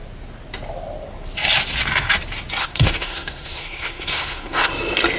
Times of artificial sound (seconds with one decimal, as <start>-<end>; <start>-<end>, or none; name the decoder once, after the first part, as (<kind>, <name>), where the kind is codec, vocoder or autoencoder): 2.6-4.7 (codec, SNAC)